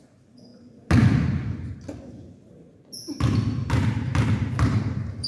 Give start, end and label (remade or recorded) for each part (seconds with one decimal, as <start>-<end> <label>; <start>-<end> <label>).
0.0-0.5 remade; 0.5-3.7 recorded; 3.7-5.3 remade